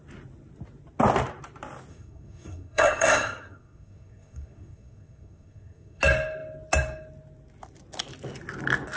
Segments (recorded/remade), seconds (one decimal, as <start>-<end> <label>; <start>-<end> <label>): 0.0-1.9 recorded; 1.9-6.0 remade; 6.0-9.0 recorded